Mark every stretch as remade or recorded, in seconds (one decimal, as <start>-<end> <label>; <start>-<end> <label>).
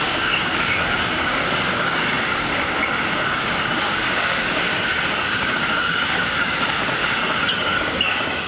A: 0.0-2.8 remade; 2.8-3.3 recorded; 3.3-4.7 remade; 4.7-5.3 recorded; 5.3-7.0 remade; 7.0-7.5 recorded; 7.5-8.5 remade